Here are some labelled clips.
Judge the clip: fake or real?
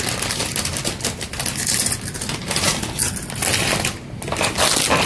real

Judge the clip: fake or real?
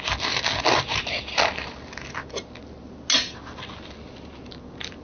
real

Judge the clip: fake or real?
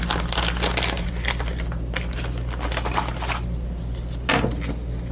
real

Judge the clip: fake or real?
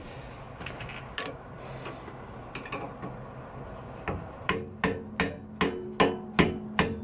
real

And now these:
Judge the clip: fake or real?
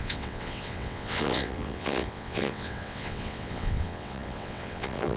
fake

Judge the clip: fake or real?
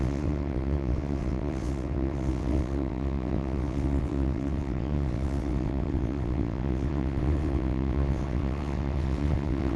fake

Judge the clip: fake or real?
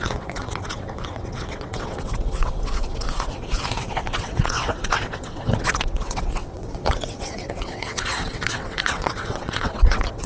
fake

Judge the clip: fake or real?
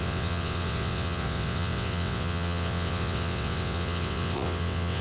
fake